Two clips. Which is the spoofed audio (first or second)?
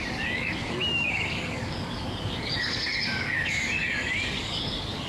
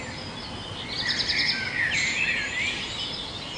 first